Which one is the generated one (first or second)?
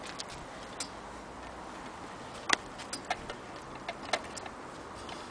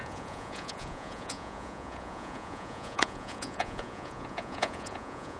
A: second